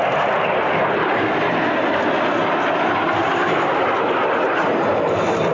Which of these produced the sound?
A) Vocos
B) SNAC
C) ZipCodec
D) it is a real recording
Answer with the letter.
D